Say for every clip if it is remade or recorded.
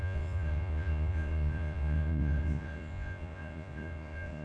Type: remade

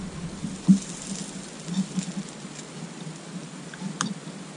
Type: recorded